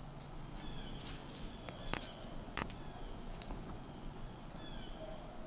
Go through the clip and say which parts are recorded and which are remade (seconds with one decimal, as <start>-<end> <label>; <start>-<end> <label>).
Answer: 0.0-0.6 remade; 0.6-1.2 recorded; 1.2-4.5 remade; 4.5-5.5 recorded